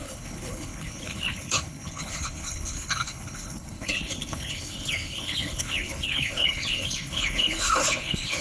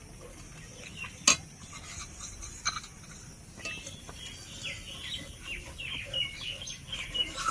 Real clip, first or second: second